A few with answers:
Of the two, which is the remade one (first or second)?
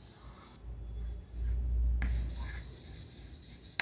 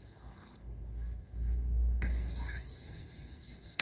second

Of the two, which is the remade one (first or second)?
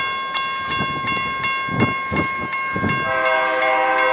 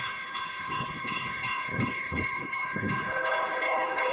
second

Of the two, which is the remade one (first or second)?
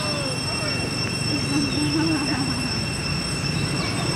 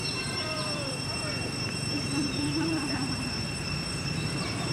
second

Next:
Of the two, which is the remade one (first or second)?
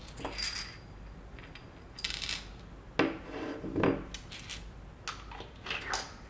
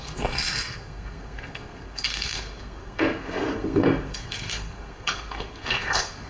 second